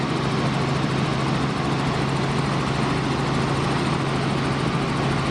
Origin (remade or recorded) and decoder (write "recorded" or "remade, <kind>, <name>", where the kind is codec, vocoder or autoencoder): recorded